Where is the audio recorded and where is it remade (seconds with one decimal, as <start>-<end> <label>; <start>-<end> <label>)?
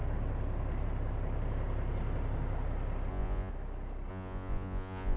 0.0-3.1 recorded; 3.1-3.5 remade; 3.5-4.1 recorded; 4.1-5.2 remade